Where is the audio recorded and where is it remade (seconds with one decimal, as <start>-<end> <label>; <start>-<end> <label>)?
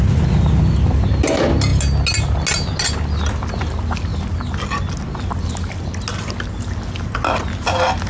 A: 0.0-8.1 recorded